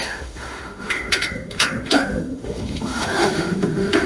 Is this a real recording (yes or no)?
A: no